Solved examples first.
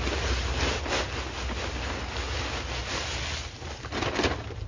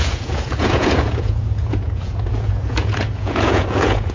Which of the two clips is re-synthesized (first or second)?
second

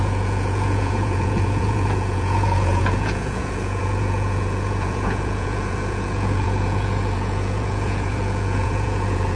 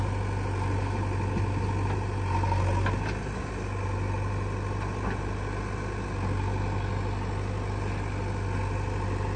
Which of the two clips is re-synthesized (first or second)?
first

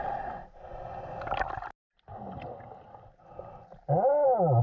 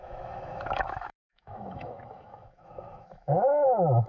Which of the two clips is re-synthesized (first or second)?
second